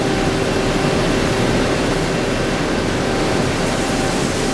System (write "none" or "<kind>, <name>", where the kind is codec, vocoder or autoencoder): none